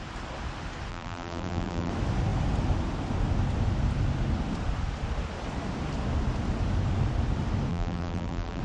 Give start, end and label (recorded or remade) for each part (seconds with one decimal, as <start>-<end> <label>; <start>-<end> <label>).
0.0-0.9 recorded; 0.9-1.9 remade; 1.9-7.7 recorded; 7.7-8.6 remade